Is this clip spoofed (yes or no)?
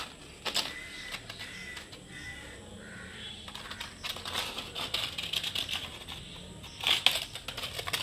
no